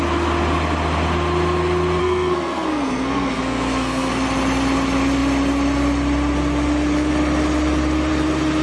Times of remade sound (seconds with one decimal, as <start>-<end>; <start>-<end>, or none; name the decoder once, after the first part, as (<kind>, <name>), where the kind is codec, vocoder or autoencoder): 2.0-4.1 (codec, SNAC)